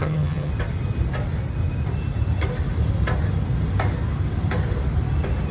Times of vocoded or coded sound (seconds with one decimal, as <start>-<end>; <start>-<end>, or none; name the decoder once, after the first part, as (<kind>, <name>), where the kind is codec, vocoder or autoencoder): 0.0-0.5 (vocoder, HiFi-GAN)